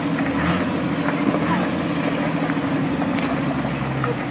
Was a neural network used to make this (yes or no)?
no